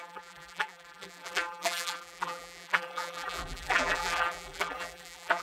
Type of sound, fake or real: fake